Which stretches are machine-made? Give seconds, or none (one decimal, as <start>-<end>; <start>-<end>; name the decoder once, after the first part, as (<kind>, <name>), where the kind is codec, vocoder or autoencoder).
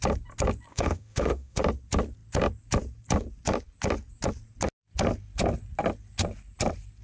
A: 0.7-1.6 (autoencoder, DAC-VAE)